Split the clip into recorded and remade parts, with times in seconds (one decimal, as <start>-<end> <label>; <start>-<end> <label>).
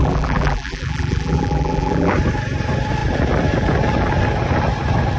0.0-2.1 remade; 2.1-5.2 recorded